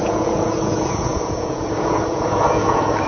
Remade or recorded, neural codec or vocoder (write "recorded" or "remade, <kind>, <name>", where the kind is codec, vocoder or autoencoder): remade, vocoder, Vocos